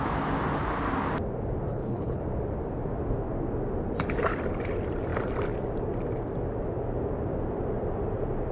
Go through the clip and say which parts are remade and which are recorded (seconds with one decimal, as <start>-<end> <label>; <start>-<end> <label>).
0.0-1.7 recorded; 1.7-2.2 remade; 2.2-8.5 recorded